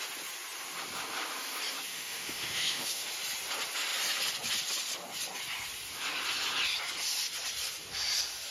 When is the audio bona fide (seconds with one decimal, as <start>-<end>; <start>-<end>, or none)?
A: 0.0-1.9; 3.1-8.5

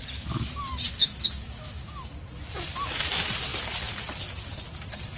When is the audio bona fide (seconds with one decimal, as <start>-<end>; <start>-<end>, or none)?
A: 0.0-0.9; 2.1-5.2

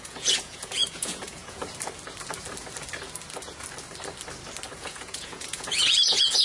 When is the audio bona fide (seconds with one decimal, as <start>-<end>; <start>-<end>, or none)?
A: 1.6-4.8

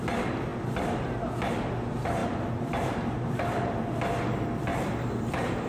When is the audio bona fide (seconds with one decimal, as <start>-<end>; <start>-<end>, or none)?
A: 0.0-2.2; 3.9-4.7; 5.3-5.7

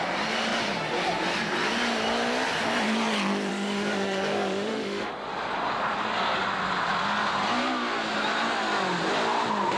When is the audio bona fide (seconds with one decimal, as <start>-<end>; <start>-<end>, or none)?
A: 0.0-3.5; 5.1-9.8

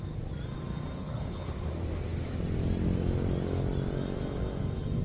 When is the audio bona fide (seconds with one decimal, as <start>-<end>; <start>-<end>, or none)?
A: 0.0-1.0; 1.7-5.0

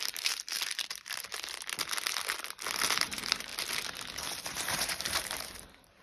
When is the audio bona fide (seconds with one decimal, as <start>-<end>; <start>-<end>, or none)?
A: 1.3-3.0; 3.5-4.5

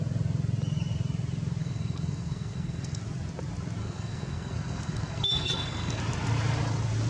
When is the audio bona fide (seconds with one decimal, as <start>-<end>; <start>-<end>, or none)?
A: 0.0-1.6; 3.0-3.8; 6.0-7.1